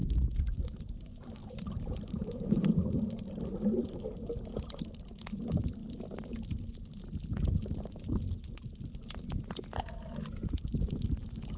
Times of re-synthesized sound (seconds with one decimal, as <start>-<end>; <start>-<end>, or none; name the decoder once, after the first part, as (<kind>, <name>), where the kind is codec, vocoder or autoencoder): 1.4-3.0 (vocoder, BigVGAN v2)